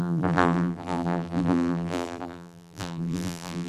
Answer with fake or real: fake